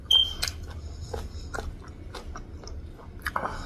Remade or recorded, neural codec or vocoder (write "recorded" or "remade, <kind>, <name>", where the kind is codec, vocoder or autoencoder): recorded